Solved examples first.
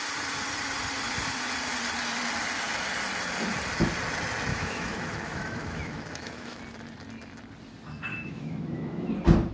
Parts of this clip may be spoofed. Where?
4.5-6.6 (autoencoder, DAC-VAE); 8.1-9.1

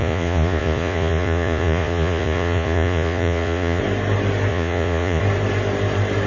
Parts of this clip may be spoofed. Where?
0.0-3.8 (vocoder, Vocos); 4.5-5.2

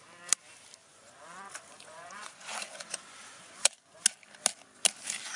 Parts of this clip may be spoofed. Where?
0.8-4.0 (vocoder, Vocos)